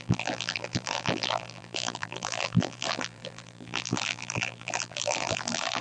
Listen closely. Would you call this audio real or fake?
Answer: fake